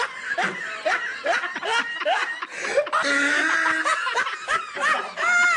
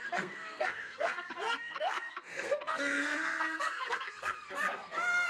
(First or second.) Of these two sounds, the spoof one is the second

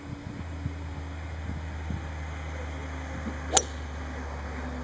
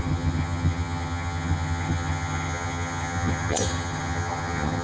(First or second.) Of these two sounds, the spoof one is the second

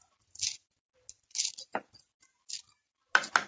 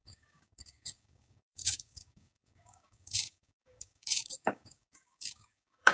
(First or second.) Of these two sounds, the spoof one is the second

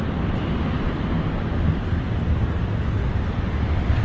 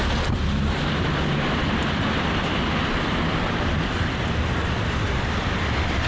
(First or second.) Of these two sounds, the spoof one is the second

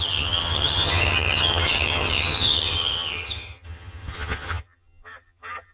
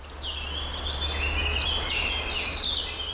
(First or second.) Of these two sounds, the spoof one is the first